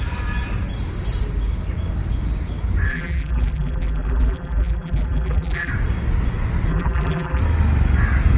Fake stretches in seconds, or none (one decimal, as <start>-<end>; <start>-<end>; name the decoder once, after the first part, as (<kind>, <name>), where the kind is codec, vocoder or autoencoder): 2.9-5.7 (vocoder, BigVGAN v2); 6.7-7.4